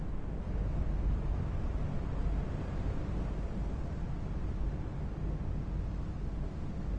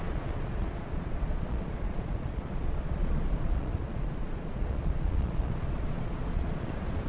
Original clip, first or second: first